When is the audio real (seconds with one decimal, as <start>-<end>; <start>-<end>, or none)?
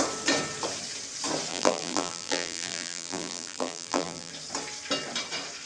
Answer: 0.0-1.5; 4.3-5.7